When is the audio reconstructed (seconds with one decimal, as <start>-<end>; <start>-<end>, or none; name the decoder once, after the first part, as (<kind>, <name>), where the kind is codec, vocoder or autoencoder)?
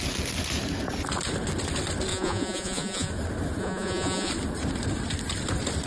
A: 2.1-3.1 (vocoder, Vocos); 3.6-4.3